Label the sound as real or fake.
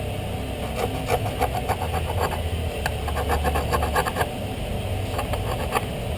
real